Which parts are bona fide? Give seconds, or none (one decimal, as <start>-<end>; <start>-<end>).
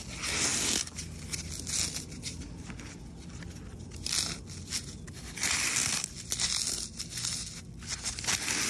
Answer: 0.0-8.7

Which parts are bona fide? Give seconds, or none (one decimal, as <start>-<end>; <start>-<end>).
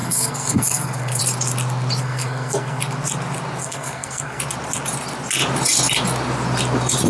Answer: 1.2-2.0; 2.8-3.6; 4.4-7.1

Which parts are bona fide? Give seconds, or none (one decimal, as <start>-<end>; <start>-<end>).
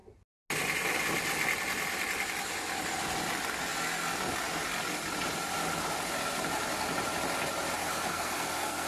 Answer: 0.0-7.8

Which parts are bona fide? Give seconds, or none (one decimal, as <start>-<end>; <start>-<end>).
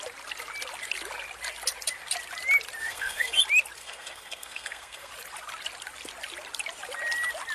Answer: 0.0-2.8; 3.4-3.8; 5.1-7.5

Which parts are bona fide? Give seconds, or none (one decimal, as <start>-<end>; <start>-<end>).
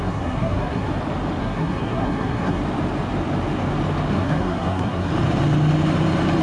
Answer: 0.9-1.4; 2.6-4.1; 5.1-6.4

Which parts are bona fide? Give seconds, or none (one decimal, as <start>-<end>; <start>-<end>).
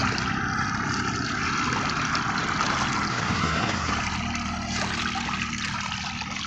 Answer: 0.0-3.1; 3.9-6.5